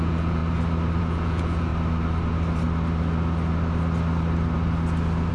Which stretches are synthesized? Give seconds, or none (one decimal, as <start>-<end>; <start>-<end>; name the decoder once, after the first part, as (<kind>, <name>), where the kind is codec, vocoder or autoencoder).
0.0-0.4 (vocoder, Vocos); 1.0-1.7